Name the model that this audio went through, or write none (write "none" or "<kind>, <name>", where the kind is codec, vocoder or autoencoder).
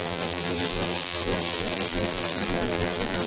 vocoder, BigVGAN v2